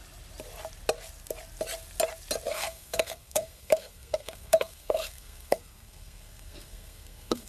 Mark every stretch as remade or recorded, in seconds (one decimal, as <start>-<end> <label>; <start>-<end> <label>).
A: 0.0-2.5 recorded; 2.5-7.5 remade